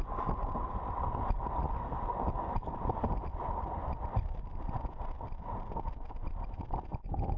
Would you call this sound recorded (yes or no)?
yes